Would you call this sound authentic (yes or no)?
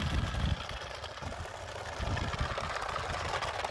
yes